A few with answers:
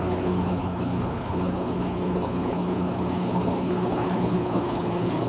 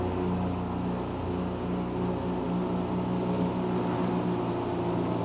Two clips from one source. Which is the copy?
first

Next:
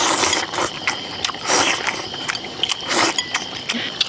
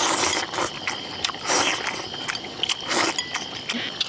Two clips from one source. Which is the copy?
first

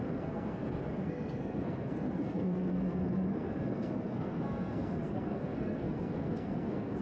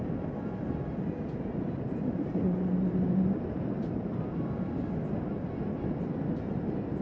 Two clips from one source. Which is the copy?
first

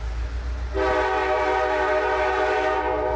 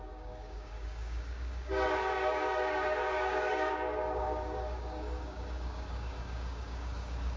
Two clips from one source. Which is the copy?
second